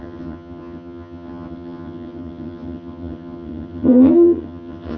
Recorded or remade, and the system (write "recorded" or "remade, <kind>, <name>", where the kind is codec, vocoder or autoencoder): remade, vocoder, HiFi-GAN